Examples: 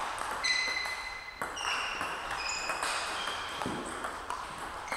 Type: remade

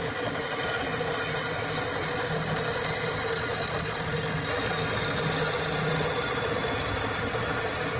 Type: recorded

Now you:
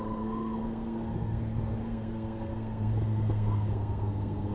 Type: remade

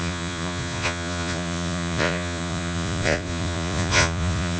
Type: remade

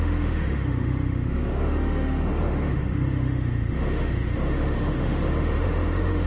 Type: remade